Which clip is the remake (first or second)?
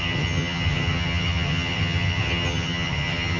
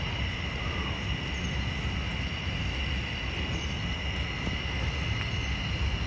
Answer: first